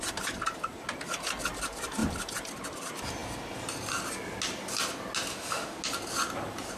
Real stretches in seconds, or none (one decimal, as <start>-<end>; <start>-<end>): 0.0-5.3; 5.8-6.8